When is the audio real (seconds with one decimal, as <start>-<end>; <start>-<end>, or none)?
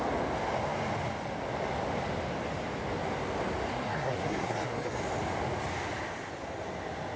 0.0-3.7; 5.0-7.2